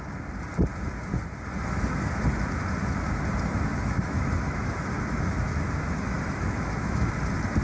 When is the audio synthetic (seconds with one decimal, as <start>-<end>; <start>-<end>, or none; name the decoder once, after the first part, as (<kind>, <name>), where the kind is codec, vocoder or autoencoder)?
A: 1.6-2.2 (autoencoder, DAC-VAE); 3.7-7.1